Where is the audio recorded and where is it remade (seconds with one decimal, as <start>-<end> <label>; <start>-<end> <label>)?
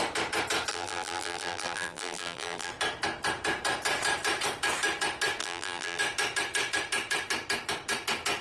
0.0-0.7 recorded; 0.7-2.7 remade; 2.7-5.4 recorded; 5.4-6.0 remade; 6.0-8.4 recorded